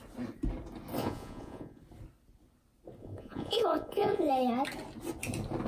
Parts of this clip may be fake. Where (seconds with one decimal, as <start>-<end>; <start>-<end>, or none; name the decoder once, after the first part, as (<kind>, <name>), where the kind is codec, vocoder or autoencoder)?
1.0-1.8 (vocoder, Vocos); 3.0-4.3